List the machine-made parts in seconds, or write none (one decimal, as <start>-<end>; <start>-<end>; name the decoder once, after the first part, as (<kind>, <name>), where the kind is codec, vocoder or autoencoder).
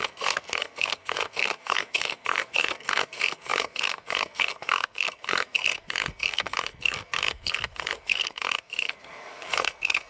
0.0-10.1 (codec, SNAC)